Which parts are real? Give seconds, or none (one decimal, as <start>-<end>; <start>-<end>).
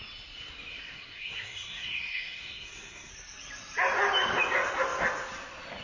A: 0.0-0.7; 3.1-5.8